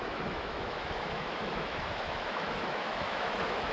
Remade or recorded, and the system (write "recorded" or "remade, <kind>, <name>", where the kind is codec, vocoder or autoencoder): remade, autoencoder, DAC-VAE